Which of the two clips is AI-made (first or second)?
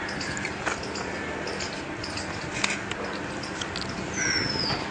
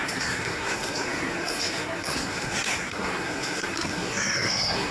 second